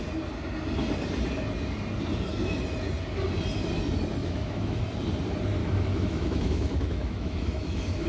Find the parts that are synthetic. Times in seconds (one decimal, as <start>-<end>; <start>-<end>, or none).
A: 4.2-4.8; 5.6-8.1